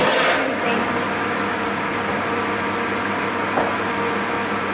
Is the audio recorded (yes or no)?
yes